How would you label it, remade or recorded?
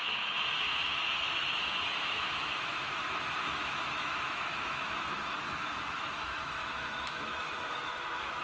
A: remade